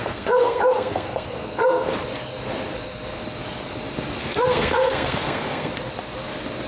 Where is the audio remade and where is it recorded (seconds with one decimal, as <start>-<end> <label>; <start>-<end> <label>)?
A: 0.0-1.9 remade; 1.9-4.2 recorded; 4.2-5.7 remade; 5.7-6.7 recorded